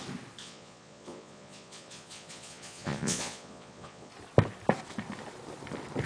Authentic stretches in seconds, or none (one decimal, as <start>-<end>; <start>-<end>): 0.0-0.4; 4.1-6.1